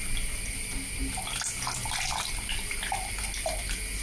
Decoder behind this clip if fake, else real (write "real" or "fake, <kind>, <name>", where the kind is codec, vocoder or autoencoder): real